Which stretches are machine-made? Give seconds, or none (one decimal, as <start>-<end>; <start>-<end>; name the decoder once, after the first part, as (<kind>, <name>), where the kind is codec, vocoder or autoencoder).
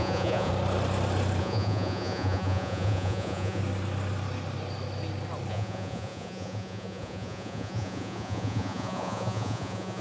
0.0-0.5 (vocoder, Vocos); 1.4-3.6; 5.5-10.0